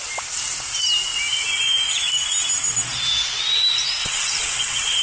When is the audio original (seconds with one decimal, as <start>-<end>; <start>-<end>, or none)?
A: 0.0-4.0